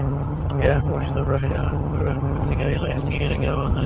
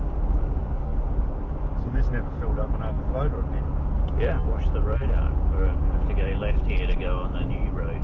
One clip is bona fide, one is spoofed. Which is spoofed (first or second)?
first